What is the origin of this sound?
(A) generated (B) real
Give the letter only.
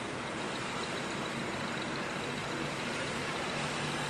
A